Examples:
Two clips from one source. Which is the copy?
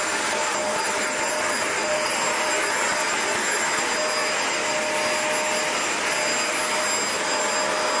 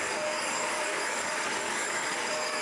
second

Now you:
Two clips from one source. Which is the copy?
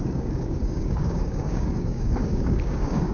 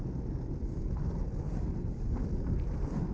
first